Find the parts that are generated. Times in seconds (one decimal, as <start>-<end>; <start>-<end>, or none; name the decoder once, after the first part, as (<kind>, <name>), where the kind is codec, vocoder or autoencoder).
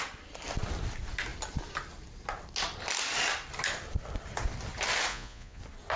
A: 5.1-5.6 (vocoder, Vocos)